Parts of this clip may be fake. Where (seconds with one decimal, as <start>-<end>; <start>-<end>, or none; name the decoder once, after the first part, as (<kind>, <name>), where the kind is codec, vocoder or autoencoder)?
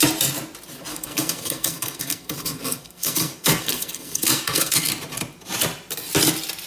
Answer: 0.9-4.9 (codec, SNAC)